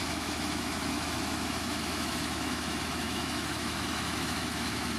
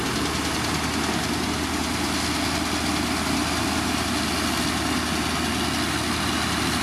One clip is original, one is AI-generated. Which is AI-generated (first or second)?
first